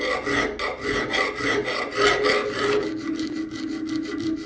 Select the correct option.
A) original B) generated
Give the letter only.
A